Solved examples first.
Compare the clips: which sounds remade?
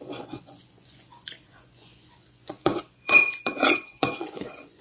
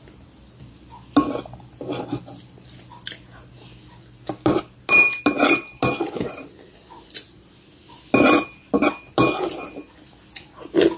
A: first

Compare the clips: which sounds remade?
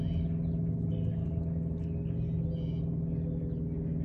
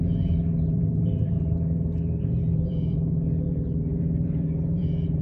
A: second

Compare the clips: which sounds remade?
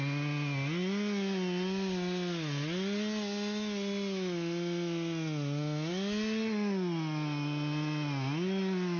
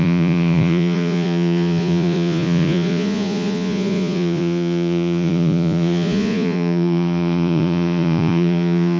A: second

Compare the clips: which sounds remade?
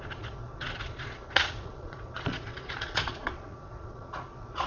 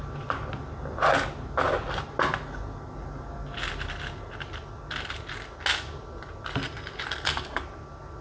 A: first